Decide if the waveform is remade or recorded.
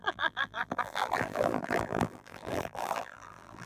remade